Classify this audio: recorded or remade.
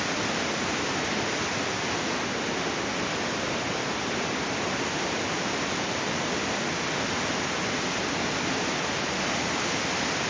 recorded